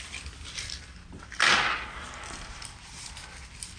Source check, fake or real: real